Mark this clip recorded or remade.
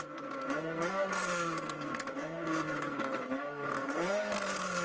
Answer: remade